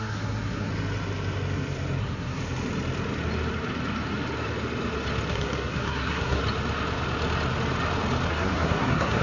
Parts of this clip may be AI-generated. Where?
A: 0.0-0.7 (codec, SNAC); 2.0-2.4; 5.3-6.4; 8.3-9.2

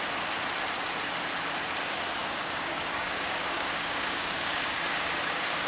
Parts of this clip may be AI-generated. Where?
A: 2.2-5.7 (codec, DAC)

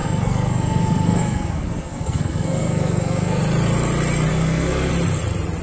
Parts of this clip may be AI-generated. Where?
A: 0.0-3.4 (codec, SNAC); 4.3-4.9

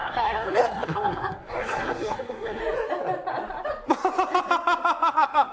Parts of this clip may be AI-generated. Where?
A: 0.0-2.6 (codec, SNAC); 5.1-5.5